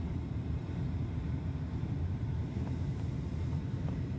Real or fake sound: fake